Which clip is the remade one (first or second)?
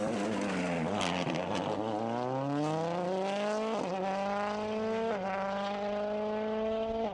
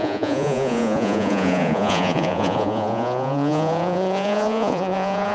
second